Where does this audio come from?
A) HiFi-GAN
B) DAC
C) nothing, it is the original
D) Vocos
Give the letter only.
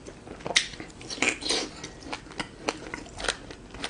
C